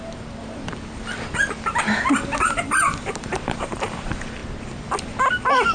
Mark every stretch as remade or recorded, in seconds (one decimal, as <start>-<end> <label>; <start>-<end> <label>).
0.0-0.7 remade; 0.7-2.5 recorded; 2.5-4.4 remade; 4.4-5.3 recorded; 5.3-5.7 remade